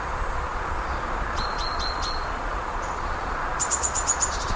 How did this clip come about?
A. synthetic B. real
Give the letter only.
A